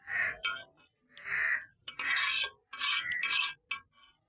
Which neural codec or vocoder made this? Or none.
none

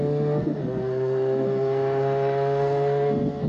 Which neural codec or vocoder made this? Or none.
codec, SNAC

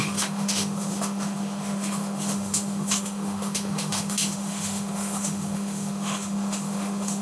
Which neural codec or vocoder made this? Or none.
autoencoder, DAC-VAE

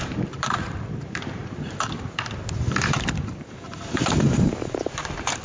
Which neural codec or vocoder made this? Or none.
vocoder, BigVGAN v2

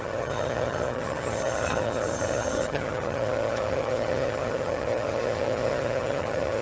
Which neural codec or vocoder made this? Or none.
vocoder, HiFi-GAN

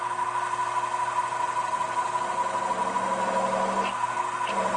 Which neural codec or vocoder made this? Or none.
none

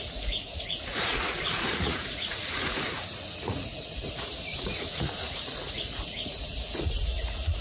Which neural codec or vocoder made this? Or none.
vocoder, Vocos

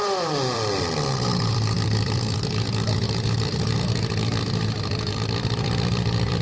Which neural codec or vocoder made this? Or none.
vocoder, BigVGAN v2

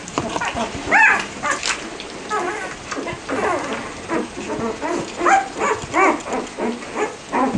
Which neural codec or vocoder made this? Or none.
none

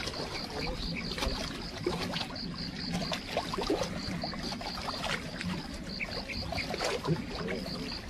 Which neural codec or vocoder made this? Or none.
none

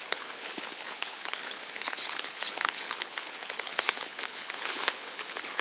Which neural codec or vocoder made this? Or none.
codec, HILCodec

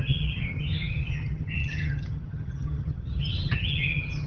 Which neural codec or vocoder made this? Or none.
vocoder, HiFi-GAN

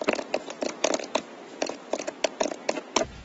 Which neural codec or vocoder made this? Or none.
none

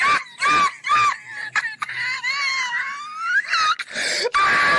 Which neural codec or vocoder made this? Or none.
none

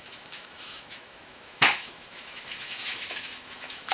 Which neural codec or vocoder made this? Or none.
autoencoder, DAC-VAE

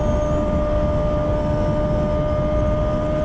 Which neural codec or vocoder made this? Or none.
none